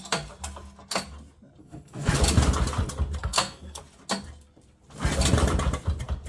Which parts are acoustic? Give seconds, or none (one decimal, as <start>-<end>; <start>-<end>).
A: 0.0-1.6; 2.1-3.2; 3.8-6.3